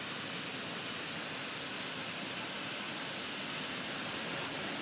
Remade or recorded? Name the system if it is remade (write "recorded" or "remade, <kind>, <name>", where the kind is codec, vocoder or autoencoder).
recorded